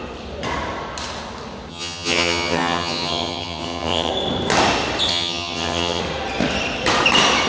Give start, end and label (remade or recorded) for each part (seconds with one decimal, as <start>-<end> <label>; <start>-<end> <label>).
0.0-1.7 recorded; 1.7-4.1 remade; 4.1-5.1 recorded; 5.1-6.0 remade; 6.0-7.5 recorded